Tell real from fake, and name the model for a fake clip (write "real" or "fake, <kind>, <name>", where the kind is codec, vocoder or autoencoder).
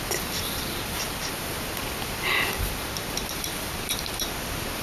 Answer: fake, vocoder, BigVGAN v2